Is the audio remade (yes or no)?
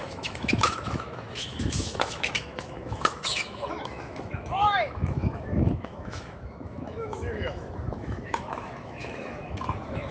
yes